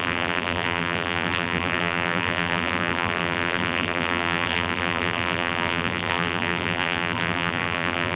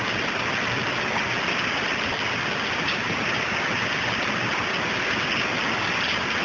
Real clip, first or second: second